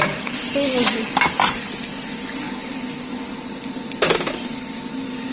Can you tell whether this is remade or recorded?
recorded